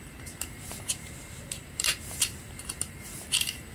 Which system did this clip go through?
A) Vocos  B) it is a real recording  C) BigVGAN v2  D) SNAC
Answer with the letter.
C